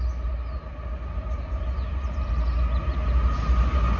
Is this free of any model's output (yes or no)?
yes